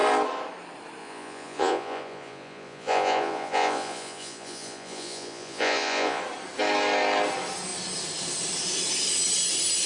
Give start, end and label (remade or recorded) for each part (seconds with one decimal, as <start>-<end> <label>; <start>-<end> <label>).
0.0-1.0 recorded; 1.0-6.2 remade; 6.2-9.9 recorded